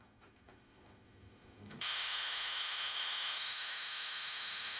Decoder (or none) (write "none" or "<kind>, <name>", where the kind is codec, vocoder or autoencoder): autoencoder, DAC-VAE